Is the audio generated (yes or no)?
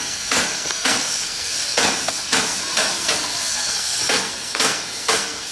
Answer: yes